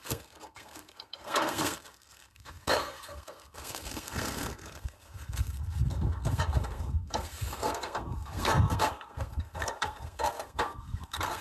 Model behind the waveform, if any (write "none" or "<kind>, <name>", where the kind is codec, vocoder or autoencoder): codec, SNAC